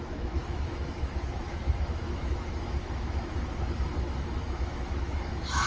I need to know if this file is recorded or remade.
remade